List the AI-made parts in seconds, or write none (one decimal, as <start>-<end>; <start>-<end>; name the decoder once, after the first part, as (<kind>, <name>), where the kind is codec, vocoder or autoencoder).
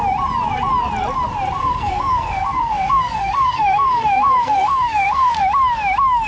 1.6-5.4 (codec, SNAC)